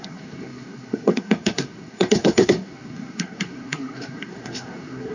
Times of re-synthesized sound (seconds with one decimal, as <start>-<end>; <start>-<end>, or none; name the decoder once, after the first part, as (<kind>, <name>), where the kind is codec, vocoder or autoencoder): 0.0-5.1 (codec, SNAC)

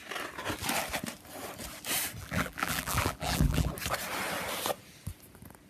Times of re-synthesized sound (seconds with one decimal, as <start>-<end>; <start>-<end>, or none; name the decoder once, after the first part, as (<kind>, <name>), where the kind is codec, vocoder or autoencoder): 2.2-3.7 (vocoder, BigVGAN v2)

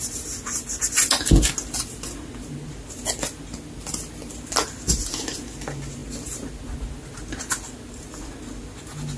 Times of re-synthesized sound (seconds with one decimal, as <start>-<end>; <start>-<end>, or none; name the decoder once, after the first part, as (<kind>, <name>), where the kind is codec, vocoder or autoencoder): none

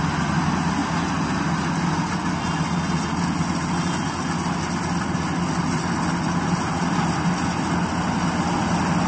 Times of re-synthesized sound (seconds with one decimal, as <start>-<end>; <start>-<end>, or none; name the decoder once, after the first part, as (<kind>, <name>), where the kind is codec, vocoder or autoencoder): none

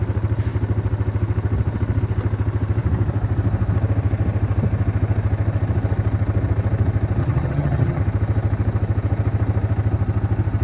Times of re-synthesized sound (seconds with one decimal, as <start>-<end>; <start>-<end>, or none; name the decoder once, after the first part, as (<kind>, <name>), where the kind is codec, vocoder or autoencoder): 7.2-8.0 (vocoder, HiFi-GAN)

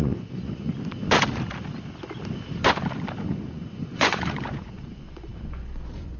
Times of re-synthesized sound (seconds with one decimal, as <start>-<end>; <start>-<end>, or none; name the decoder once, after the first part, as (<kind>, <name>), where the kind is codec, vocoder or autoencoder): 0.0-0.7 (vocoder, Vocos); 3.3-6.2

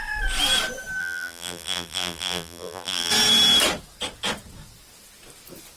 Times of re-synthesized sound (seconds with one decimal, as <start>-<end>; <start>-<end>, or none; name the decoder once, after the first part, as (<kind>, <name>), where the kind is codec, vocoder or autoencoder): 1.0-3.1 (vocoder, BigVGAN v2)